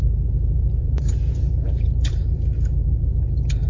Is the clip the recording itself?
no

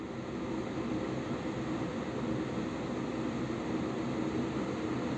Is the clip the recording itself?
yes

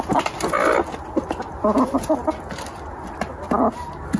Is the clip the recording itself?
yes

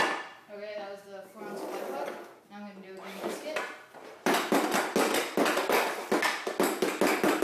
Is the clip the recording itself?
yes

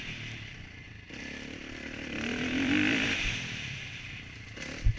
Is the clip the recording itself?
no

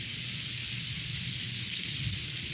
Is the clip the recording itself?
yes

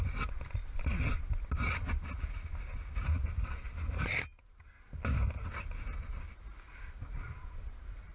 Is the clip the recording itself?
yes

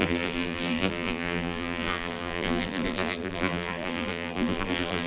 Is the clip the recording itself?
no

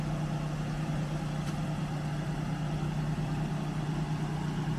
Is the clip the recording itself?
yes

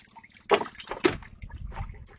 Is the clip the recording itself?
yes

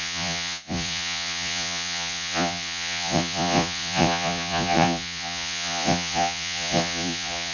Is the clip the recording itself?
no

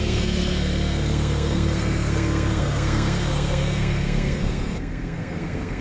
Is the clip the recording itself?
no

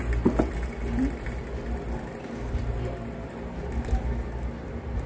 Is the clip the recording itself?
yes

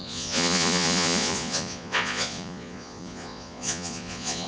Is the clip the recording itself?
no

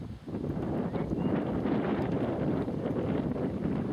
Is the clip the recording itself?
yes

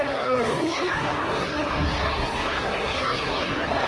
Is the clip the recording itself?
no